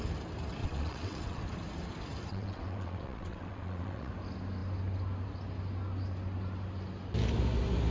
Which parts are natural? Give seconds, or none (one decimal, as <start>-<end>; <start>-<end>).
0.0-0.6; 1.4-2.3; 4.1-7.9